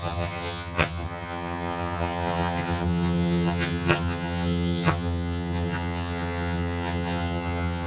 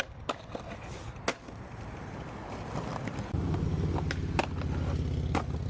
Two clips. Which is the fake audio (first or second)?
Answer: first